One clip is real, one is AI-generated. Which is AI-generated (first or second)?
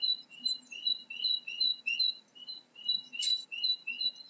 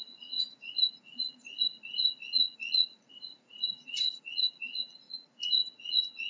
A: second